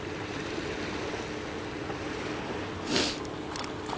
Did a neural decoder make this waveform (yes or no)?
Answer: no